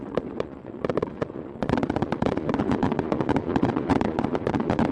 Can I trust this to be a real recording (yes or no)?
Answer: no